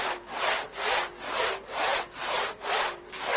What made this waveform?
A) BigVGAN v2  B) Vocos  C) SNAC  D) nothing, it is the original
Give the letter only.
D